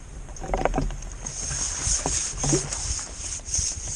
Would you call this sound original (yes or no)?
yes